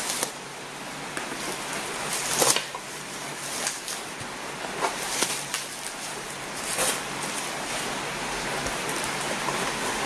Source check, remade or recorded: recorded